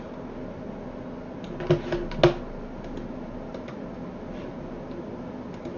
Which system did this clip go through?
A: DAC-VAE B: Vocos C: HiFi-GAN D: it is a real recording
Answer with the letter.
D